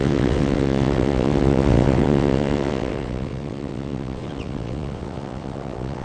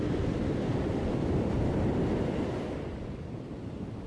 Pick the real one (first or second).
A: second